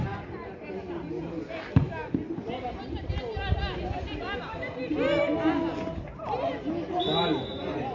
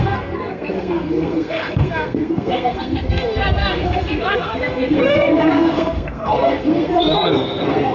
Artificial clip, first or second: second